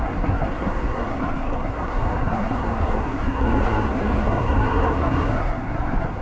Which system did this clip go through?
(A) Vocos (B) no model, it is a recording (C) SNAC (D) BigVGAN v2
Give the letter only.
C